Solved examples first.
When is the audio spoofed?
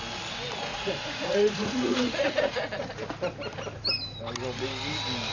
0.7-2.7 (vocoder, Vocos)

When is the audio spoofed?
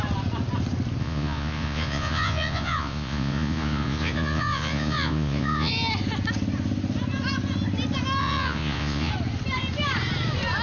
1.0-5.7 (vocoder, Vocos); 8.2-9.1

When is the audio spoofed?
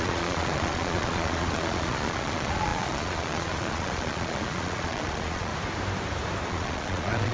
0.0-5.5 (vocoder, Vocos); 6.5-7.3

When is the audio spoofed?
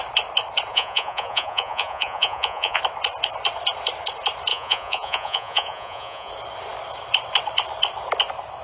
0.7-2.8 (vocoder, Vocos); 4.5-6.3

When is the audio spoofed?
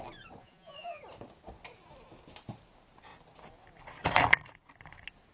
0.4-1.0 (vocoder, Vocos)